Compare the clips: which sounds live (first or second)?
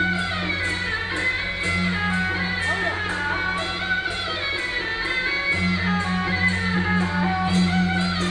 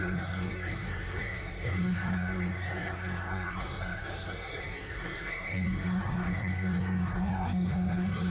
first